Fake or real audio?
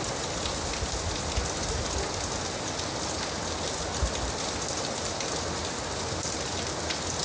real